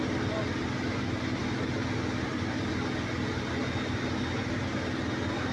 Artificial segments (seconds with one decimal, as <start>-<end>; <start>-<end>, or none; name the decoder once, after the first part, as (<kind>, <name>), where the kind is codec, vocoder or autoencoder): none